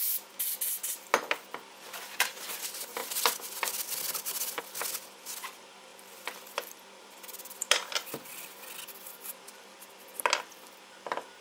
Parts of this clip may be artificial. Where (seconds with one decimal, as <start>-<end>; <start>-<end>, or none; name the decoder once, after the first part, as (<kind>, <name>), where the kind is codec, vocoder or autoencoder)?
3.0-4.6 (vocoder, BigVGAN v2); 5.9-10.2